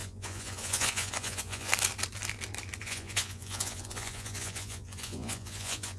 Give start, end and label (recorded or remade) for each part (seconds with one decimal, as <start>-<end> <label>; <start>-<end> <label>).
0.0-1.7 remade; 1.7-2.8 recorded; 2.8-6.0 remade